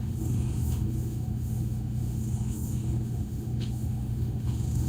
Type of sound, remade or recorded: remade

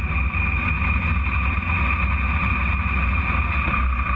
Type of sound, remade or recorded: recorded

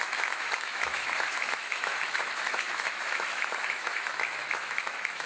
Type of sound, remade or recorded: remade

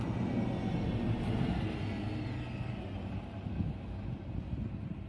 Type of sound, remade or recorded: recorded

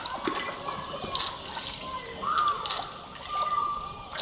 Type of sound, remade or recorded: recorded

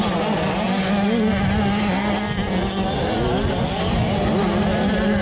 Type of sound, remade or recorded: recorded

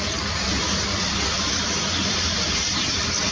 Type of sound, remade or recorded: recorded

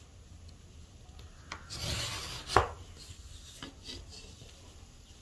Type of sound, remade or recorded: recorded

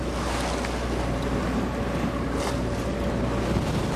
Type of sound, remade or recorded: recorded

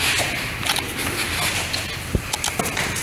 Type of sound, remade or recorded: recorded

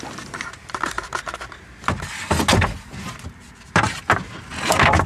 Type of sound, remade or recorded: recorded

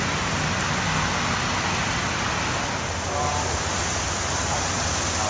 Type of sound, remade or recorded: recorded